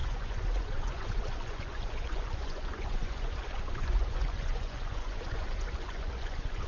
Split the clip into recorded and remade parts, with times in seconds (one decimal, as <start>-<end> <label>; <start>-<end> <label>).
0.0-6.7 remade